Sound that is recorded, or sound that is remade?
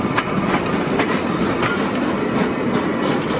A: recorded